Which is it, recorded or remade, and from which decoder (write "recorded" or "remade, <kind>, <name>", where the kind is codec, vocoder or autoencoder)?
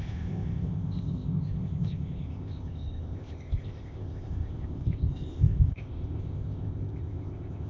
remade, codec, ZipCodec